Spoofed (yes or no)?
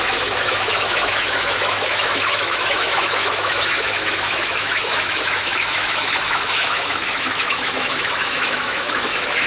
yes